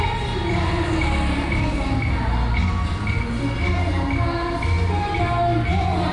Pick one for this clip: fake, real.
real